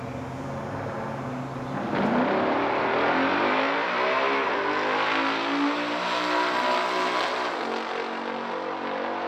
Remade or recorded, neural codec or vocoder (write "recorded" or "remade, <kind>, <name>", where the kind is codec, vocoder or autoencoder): recorded